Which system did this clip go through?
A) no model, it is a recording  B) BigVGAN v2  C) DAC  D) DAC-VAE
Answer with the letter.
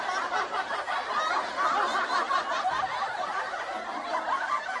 A